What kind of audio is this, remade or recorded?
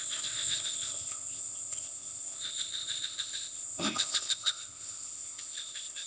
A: remade